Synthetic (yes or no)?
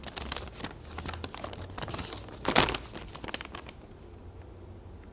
no